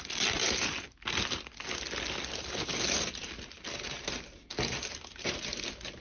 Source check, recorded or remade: recorded